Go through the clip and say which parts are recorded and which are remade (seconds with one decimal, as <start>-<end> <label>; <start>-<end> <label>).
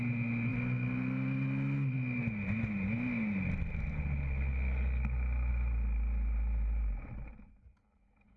0.0-8.4 recorded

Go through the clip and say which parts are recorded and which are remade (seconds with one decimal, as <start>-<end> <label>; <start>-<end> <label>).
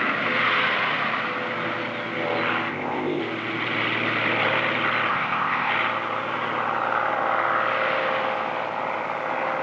0.0-2.7 recorded; 2.7-3.2 remade; 3.2-5.1 recorded; 5.1-5.7 remade; 5.7-9.6 recorded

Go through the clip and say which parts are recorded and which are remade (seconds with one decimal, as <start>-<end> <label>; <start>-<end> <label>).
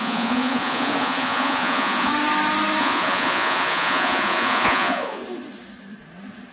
0.0-2.1 remade; 2.1-2.8 recorded; 2.8-5.2 remade; 5.2-6.5 recorded